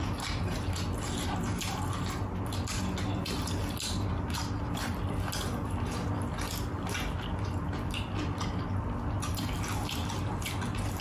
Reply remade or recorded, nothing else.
recorded